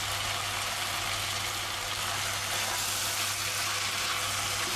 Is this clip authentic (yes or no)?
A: yes